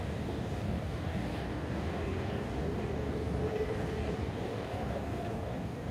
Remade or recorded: remade